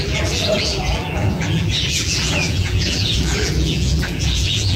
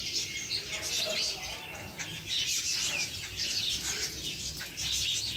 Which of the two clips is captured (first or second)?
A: second